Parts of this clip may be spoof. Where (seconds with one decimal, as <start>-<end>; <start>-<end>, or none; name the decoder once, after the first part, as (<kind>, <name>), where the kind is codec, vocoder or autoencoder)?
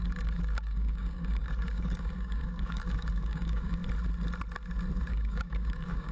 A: 0.0-3.8 (codec, DAC); 5.1-6.1